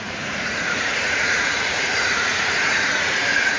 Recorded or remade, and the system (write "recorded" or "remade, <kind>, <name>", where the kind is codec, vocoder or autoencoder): remade, vocoder, Vocos